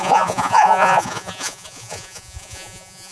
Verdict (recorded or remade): remade